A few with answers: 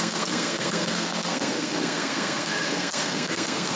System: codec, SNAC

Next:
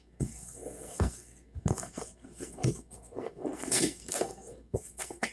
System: codec, SNAC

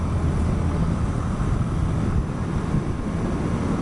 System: none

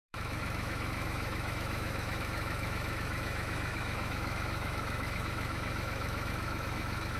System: autoencoder, DAC-VAE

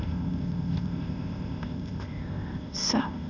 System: codec, ZipCodec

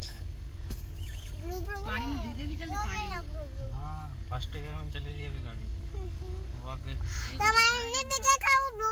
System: codec, DAC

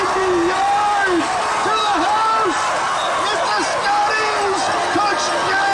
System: none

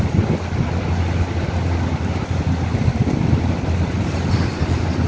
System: none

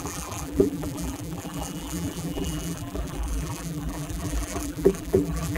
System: vocoder, BigVGAN v2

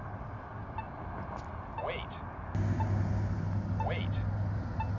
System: none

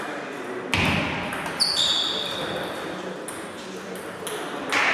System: none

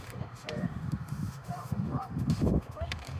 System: autoencoder, DAC-VAE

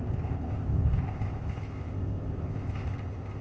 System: codec, ZipCodec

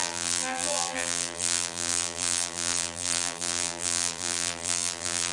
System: vocoder, BigVGAN v2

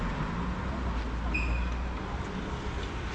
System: none